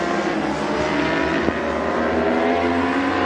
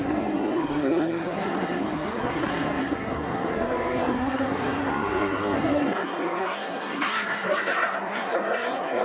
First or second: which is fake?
second